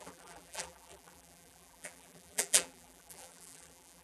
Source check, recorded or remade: remade